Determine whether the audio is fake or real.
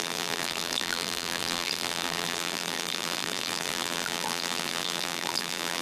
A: fake